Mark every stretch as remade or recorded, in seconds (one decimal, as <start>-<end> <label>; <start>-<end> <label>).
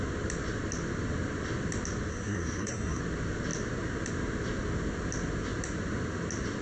0.0-2.1 recorded; 2.1-3.0 remade; 3.0-6.6 recorded